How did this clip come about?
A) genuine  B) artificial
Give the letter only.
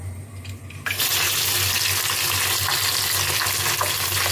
A